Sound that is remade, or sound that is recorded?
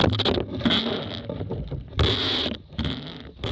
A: recorded